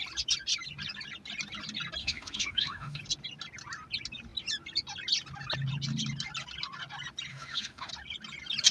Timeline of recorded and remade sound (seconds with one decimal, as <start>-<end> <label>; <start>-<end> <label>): 0.0-2.0 recorded; 2.0-3.0 remade; 3.0-7.3 recorded; 7.3-7.9 remade; 7.9-8.7 recorded